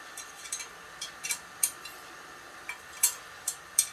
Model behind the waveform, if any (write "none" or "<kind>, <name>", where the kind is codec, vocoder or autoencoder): vocoder, BigVGAN v2